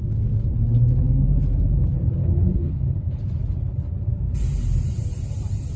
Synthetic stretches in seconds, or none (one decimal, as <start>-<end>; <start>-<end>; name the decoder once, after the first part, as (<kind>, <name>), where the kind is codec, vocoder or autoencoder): 2.2-3.2 (codec, HILCodec)